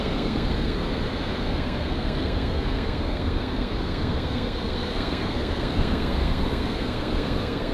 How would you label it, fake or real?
fake